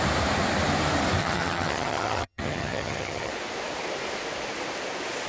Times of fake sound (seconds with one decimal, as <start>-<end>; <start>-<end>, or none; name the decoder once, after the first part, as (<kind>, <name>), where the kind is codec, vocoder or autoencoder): 1.2-3.3 (vocoder, HiFi-GAN)